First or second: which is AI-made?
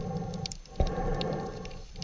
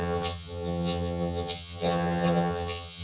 second